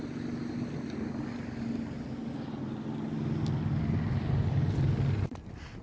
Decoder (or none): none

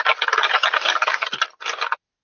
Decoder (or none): none